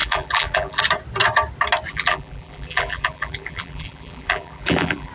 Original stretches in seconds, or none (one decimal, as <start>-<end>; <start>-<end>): 0.8-1.9